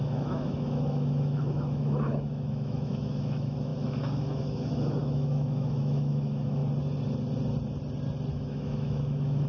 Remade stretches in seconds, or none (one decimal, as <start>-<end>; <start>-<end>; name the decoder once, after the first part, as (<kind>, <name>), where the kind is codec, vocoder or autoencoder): 0.0-6.6 (autoencoder, DAC-VAE); 8.3-9.5